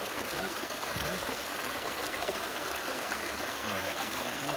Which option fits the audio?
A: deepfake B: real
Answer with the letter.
A